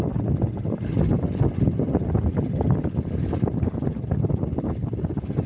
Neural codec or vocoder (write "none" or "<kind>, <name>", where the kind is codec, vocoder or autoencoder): none